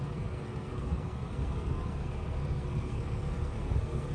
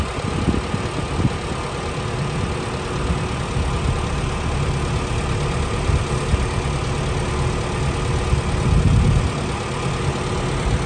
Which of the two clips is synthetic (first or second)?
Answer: first